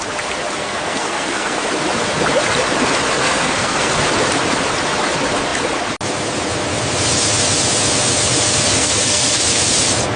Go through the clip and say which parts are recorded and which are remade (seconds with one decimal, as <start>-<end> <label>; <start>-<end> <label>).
0.0-0.6 recorded; 0.6-1.7 remade; 1.7-3.2 recorded; 3.2-3.9 remade; 3.9-8.8 recorded; 8.8-9.4 remade; 9.4-10.2 recorded